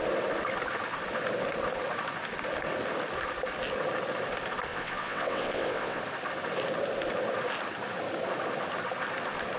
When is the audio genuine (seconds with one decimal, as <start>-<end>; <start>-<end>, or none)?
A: 0.0-4.7; 6.0-9.6